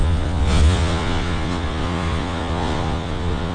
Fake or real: fake